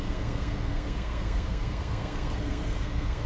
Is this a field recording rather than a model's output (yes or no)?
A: no